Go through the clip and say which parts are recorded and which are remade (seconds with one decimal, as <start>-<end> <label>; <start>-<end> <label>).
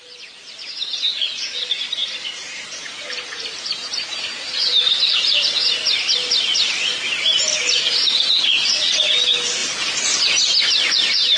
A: 0.0-9.6 recorded; 9.6-10.4 remade; 10.4-11.4 recorded